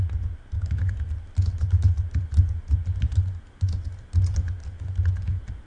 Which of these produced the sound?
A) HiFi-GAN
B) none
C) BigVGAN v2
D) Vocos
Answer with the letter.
B